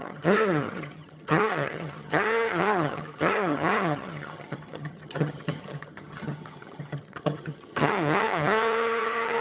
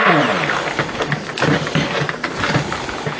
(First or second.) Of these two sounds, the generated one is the first